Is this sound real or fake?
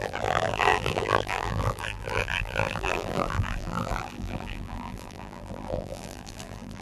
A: fake